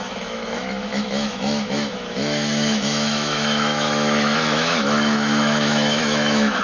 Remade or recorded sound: remade